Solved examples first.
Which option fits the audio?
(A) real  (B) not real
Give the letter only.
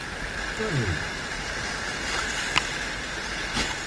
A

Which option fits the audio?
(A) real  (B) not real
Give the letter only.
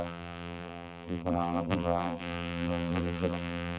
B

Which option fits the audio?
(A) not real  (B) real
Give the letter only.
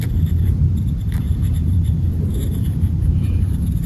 A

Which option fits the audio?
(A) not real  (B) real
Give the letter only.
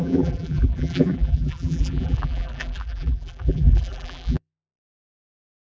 A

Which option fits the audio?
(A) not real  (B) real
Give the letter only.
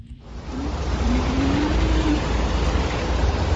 A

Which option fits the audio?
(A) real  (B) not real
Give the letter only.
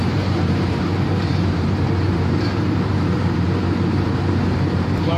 B